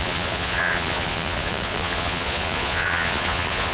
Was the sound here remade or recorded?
remade